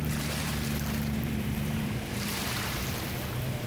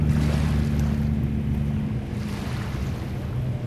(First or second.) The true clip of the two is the second